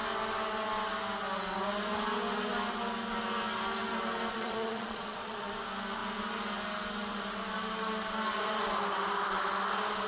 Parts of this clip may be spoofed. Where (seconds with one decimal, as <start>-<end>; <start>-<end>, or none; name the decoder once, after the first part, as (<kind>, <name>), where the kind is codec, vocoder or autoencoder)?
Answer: 4.3-5.5 (vocoder, Vocos)